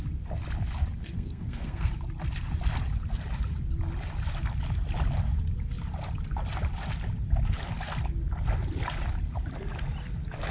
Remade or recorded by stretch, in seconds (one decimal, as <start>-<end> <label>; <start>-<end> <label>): 0.0-1.0 recorded; 1.0-1.9 remade; 1.9-10.5 recorded